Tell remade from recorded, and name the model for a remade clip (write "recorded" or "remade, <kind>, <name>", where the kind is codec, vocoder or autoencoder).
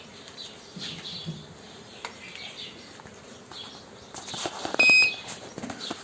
recorded